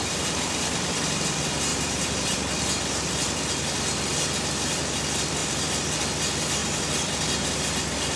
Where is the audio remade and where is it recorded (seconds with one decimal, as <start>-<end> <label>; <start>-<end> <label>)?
0.0-0.7 remade; 0.7-1.7 recorded; 1.7-3.5 remade; 3.5-5.4 recorded; 5.4-6.0 remade; 6.0-6.6 recorded; 6.6-7.7 remade; 7.7-8.2 recorded